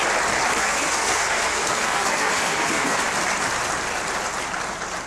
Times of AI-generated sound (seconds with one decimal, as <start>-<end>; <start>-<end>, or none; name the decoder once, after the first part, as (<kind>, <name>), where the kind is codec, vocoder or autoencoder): 0.6-3.0 (codec, SNAC)